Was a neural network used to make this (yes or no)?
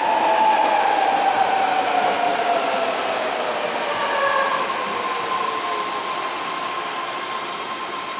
no